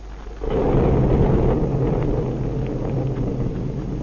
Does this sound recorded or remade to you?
recorded